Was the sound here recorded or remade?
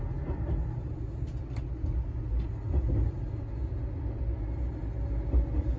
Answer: recorded